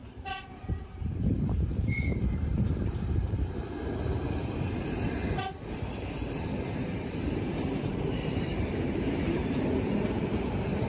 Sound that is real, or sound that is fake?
fake